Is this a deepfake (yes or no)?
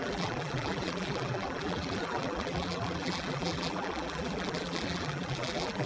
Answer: yes